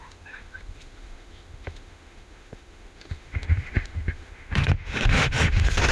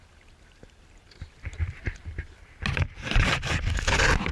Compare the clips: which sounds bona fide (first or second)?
second